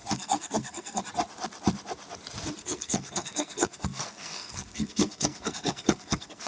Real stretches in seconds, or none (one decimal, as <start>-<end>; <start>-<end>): 1.0-2.6